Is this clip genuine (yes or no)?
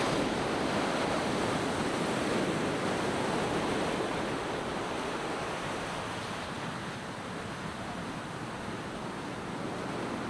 yes